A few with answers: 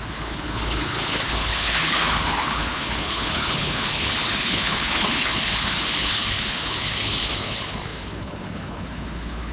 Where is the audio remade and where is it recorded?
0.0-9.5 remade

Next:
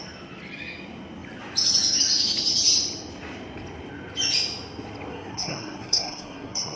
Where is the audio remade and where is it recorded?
0.0-5.1 recorded; 5.1-6.8 remade

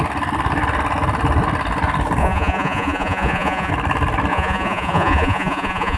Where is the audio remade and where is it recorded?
0.0-2.2 recorded; 2.2-3.7 remade; 3.7-4.3 recorded; 4.3-6.0 remade

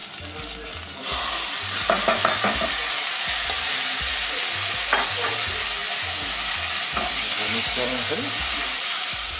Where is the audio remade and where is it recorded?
0.0-9.4 recorded

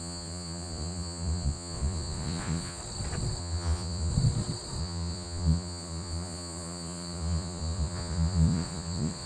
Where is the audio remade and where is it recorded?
0.0-2.8 remade; 2.8-3.4 recorded; 3.4-4.1 remade; 4.1-4.8 recorded; 4.8-9.3 remade

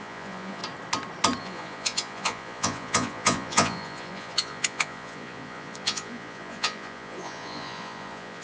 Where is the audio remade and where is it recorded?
0.0-0.6 remade; 0.6-1.4 recorded; 1.4-8.4 remade

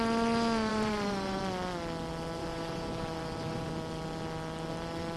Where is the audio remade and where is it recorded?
0.0-0.7 recorded; 0.7-1.4 remade; 1.4-2.4 recorded; 2.4-3.7 remade; 3.7-5.2 recorded